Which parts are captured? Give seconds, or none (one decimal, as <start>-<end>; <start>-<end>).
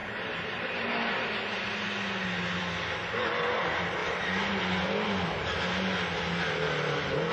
0.0-7.3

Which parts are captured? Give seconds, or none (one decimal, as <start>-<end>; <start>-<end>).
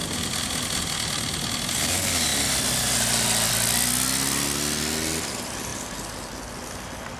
0.0-7.2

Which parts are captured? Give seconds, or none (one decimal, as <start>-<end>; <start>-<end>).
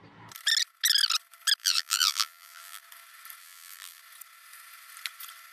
0.0-1.6; 2.8-3.4; 4.0-5.5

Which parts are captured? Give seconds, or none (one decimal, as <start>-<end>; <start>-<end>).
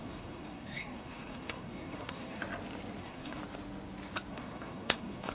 2.4-3.0; 3.4-4.3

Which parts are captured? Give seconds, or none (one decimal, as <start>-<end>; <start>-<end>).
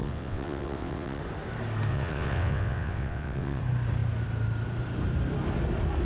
1.2-1.9; 3.6-6.0